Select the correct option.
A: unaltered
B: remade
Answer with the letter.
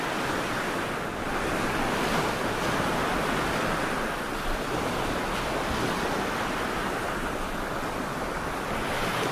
A